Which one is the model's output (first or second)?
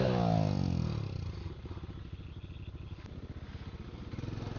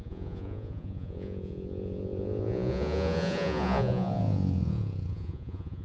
second